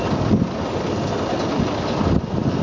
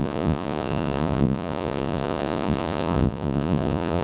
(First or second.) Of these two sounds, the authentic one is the first